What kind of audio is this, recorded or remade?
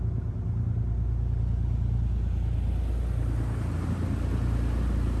recorded